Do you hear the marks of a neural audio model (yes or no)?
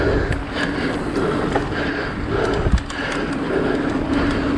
no